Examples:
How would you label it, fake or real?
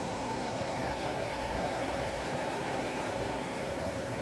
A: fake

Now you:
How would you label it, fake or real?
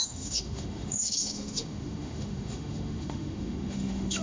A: fake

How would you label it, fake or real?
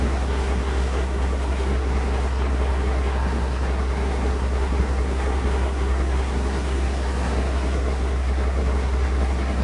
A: fake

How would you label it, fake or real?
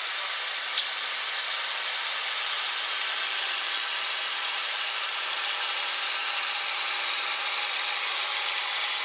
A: fake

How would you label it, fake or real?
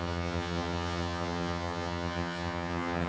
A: fake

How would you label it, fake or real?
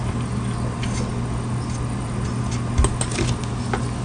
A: real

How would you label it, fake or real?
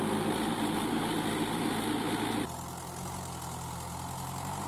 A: real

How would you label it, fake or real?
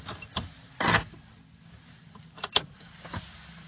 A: real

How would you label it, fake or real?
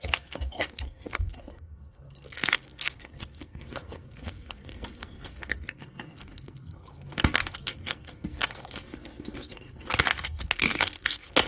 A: fake